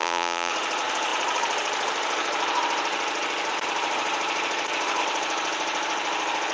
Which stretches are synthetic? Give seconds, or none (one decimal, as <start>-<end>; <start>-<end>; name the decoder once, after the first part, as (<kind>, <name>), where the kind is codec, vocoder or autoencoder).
0.0-0.5 (vocoder, BigVGAN v2)

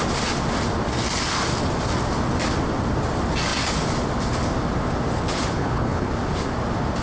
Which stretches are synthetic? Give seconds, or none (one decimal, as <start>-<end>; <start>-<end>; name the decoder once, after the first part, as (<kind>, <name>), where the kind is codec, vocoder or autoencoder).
5.5-6.1 (codec, HILCodec)

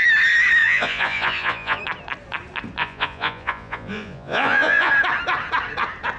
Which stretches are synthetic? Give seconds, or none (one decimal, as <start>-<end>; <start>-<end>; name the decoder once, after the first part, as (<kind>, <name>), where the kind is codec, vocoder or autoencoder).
0.6-1.8 (vocoder, Vocos); 2.8-4.9

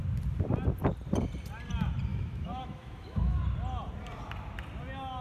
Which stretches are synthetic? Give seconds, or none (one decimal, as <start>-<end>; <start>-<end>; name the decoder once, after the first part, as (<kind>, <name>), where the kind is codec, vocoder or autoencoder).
2.1-3.4 (autoencoder, DAC-VAE)

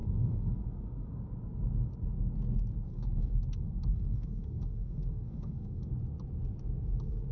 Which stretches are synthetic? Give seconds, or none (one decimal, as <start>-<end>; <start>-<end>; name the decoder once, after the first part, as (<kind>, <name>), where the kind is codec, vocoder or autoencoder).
0.0-1.2 (codec, SNAC); 2.9-5.9

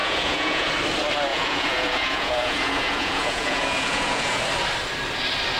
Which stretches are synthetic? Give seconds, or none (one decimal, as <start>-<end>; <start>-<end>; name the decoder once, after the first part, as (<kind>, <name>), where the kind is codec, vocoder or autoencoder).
0.0-0.7 (vocoder, Vocos); 1.3-4.4